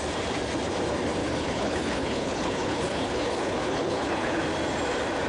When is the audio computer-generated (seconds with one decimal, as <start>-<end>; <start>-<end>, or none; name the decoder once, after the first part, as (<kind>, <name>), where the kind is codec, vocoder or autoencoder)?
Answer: 1.2-4.4 (codec, HILCodec)